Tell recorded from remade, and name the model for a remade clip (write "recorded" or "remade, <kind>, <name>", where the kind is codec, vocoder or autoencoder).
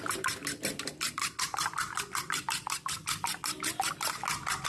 recorded